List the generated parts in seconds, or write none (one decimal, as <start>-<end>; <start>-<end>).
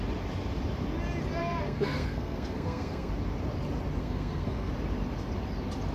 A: 1.4-3.1; 4.0-4.7